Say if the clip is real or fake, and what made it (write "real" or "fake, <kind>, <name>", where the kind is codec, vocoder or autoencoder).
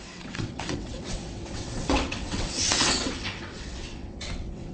fake, vocoder, WaveNeXt